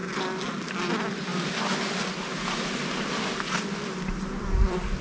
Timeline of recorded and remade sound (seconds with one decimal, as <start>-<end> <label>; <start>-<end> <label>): 0.0-5.0 recorded